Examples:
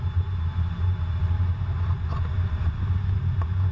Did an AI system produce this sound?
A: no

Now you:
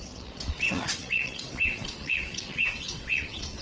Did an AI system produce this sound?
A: yes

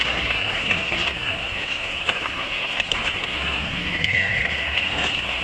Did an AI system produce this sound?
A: yes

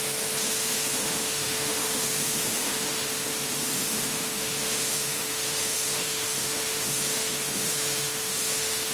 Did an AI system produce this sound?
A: yes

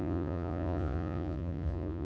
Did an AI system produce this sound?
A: yes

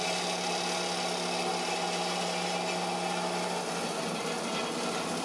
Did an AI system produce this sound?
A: no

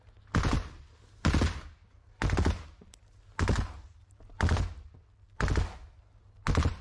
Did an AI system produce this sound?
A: no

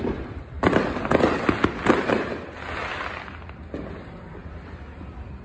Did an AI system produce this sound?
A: no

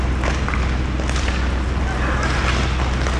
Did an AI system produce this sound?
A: no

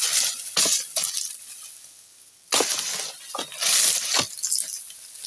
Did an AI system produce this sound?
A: no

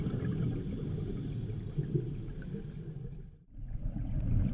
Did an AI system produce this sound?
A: no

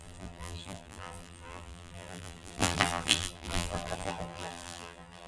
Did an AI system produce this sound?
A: yes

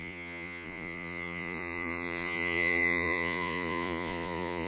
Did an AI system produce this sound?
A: yes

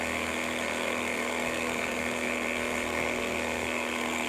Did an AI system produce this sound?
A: yes